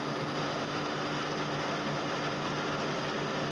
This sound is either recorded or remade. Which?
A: recorded